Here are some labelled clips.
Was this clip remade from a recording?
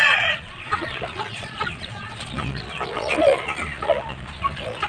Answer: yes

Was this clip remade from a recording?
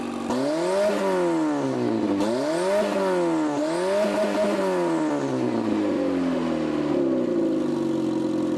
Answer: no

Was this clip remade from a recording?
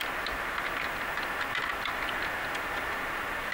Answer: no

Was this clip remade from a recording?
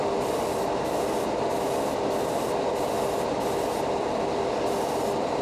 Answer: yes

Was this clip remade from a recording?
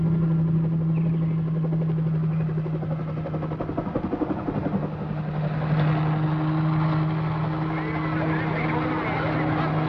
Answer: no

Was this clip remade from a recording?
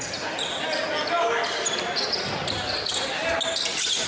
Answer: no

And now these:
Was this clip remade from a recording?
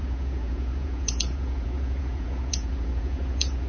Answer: yes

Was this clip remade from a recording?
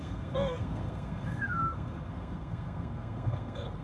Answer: yes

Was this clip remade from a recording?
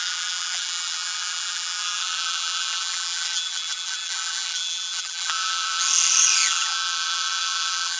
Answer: yes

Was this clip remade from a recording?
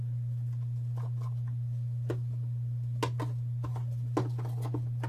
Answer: no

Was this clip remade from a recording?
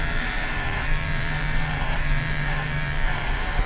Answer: yes